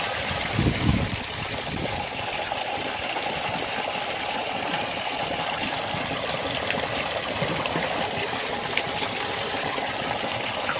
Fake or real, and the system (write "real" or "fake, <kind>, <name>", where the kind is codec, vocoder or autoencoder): fake, vocoder, BigVGAN v2